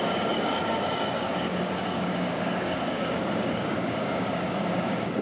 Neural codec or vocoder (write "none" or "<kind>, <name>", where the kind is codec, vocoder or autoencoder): codec, DAC